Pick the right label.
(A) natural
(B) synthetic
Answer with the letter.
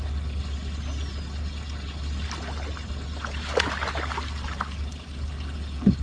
A